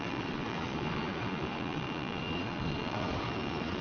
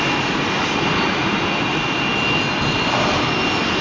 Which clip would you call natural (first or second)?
second